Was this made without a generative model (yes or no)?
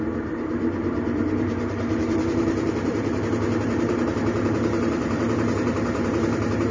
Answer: no